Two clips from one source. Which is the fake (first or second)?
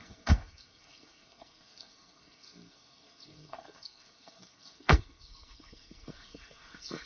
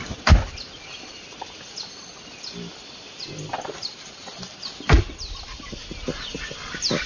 first